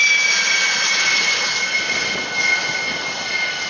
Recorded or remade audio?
recorded